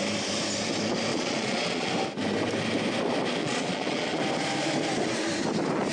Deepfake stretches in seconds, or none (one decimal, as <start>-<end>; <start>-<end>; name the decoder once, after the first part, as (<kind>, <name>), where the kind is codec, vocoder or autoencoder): 1.1-1.9 (vocoder, Vocos); 3.4-4.2